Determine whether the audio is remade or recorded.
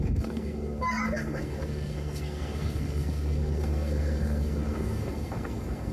remade